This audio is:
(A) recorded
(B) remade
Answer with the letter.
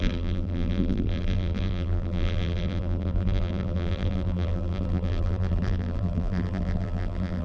B